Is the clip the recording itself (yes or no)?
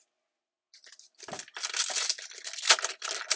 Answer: yes